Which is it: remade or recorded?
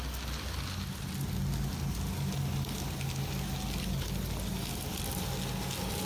recorded